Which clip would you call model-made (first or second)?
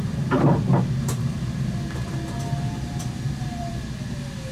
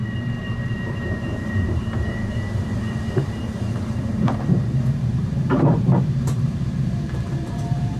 second